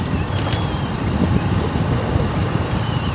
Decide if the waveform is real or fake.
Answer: real